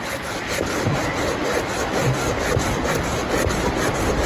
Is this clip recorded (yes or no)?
yes